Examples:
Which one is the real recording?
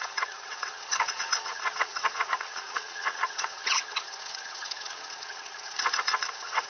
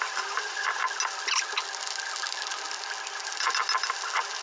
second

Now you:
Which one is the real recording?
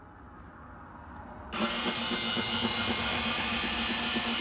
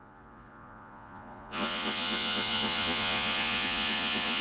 first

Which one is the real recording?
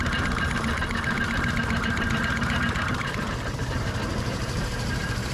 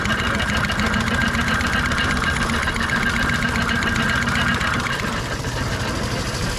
second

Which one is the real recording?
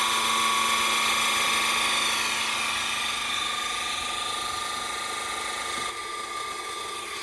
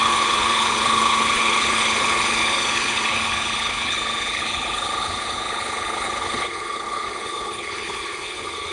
first